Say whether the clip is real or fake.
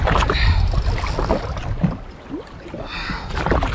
real